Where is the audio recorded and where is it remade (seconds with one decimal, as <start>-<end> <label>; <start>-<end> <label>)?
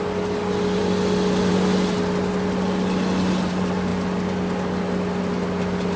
0.0-6.0 recorded